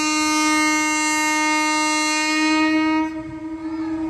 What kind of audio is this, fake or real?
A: real